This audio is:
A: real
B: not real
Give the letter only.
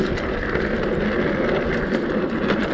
A